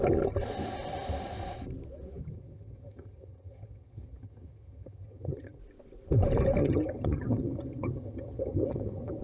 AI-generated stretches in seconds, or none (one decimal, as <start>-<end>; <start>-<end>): 2.2-5.6; 6.6-9.2